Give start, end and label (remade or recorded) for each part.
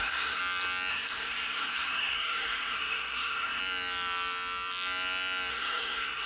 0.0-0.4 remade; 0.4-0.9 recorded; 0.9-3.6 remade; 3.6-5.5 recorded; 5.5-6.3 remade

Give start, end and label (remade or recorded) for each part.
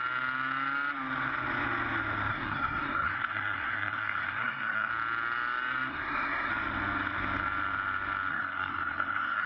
0.0-2.3 recorded; 2.3-4.9 remade; 4.9-5.9 recorded; 5.9-6.5 remade; 6.5-8.3 recorded; 8.3-9.5 remade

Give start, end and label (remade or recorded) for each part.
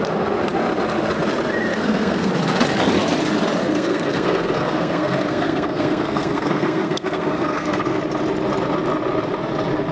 0.0-1.7 recorded; 1.7-2.3 remade; 2.3-3.6 recorded; 3.6-8.0 remade; 8.0-9.9 recorded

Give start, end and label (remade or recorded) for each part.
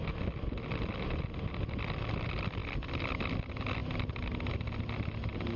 0.0-5.6 recorded